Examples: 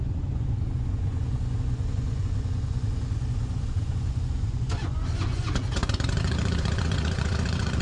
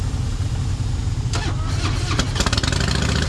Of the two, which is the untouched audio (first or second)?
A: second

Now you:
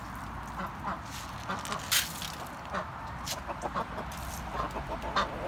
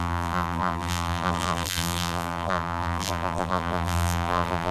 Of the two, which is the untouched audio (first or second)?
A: first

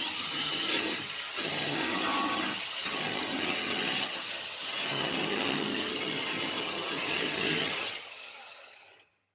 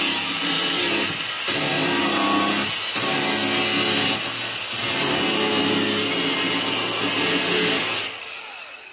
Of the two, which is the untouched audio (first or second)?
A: second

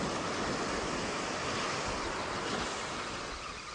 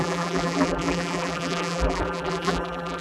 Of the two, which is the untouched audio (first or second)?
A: first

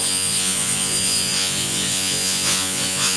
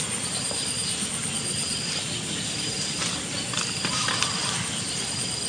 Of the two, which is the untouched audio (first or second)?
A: second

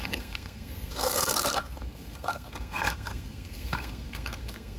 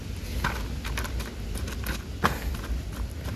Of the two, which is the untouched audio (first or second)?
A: second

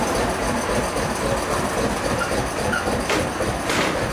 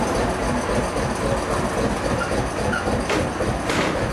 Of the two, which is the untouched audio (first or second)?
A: second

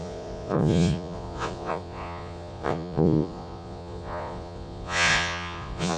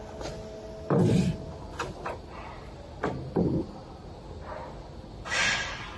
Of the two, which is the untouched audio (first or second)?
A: second